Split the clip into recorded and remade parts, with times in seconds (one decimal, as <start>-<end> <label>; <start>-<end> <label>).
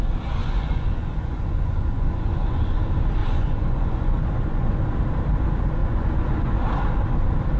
0.0-0.4 recorded; 0.4-2.8 remade; 2.8-3.2 recorded; 3.2-4.8 remade; 4.8-5.8 recorded; 5.8-6.5 remade; 6.5-7.6 recorded